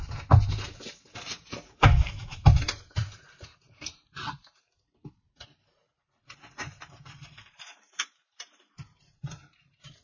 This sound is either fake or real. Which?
fake